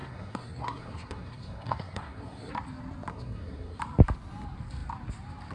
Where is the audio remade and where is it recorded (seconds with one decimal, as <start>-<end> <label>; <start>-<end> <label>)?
0.0-2.5 remade; 2.5-3.1 recorded; 3.1-3.8 remade; 3.8-5.5 recorded

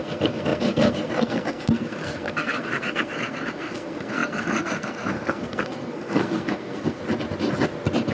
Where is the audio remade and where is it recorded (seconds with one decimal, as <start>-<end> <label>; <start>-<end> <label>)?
0.0-7.0 remade; 7.0-8.1 recorded

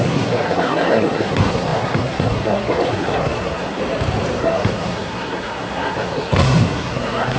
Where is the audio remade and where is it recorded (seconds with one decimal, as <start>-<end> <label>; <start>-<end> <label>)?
0.0-3.8 remade; 3.8-4.4 recorded; 4.4-7.4 remade

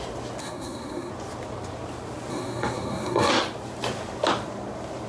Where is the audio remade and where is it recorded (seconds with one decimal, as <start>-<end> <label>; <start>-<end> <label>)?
0.0-0.4 recorded; 0.4-1.1 remade; 1.1-2.3 recorded; 2.3-3.3 remade; 3.3-5.1 recorded

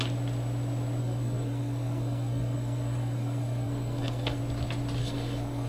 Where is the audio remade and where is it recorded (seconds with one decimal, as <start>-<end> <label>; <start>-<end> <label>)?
0.0-1.0 recorded; 1.0-4.4 remade; 4.4-5.0 recorded; 5.0-5.7 remade

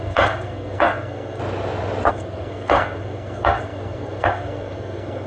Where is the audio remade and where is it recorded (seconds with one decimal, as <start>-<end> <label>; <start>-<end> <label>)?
0.0-1.4 remade; 1.4-2.1 recorded; 2.1-5.3 remade

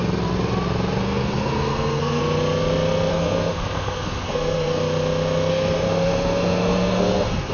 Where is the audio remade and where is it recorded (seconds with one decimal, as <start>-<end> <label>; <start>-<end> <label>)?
0.0-1.0 recorded; 1.0-2.2 remade; 2.2-3.1 recorded; 3.1-4.8 remade; 4.8-5.5 recorded; 5.5-7.5 remade